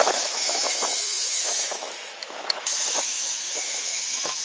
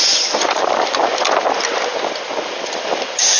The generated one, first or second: first